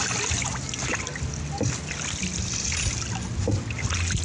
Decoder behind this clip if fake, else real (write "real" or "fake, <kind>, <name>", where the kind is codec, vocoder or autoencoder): real